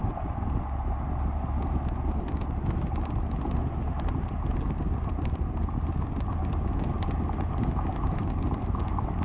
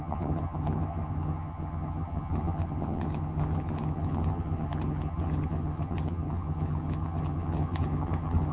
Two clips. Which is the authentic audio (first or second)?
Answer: first